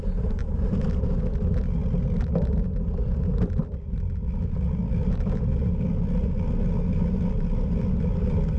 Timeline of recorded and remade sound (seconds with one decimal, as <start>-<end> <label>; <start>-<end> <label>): 0.0-0.4 recorded; 0.4-1.2 remade; 1.2-8.6 recorded